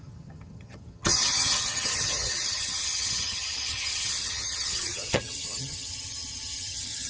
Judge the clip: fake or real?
fake